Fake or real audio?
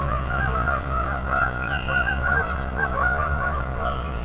fake